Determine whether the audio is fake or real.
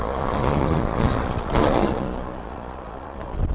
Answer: fake